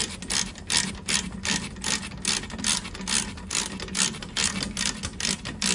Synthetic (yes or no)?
no